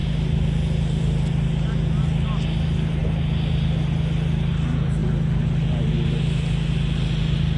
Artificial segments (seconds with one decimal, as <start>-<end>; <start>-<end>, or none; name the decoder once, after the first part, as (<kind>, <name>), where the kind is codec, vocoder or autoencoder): none